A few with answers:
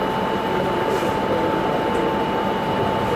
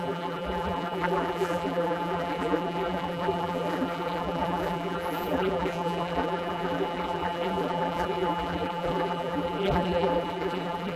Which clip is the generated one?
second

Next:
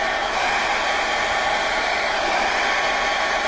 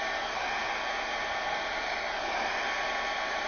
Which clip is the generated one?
first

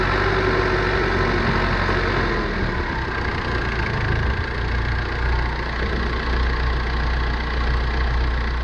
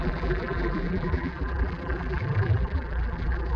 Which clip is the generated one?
second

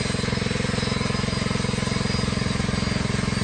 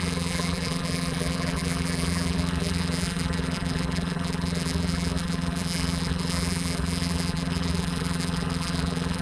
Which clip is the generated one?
second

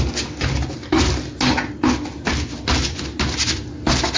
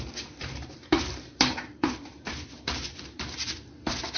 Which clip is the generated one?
second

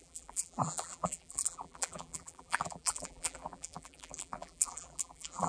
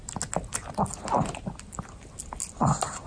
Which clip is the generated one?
first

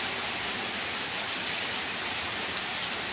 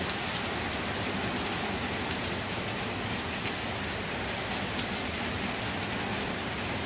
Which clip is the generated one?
first